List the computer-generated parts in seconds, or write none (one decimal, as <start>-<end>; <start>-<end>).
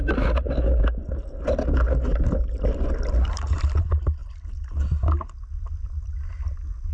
none